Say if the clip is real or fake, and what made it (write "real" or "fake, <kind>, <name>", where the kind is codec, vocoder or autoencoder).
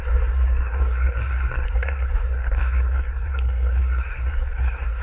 fake, codec, SNAC